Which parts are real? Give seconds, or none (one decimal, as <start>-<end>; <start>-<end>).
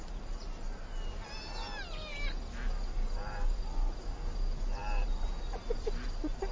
0.0-6.5